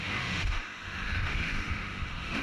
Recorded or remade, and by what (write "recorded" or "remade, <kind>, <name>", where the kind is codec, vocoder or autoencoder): remade, autoencoder, DAC-VAE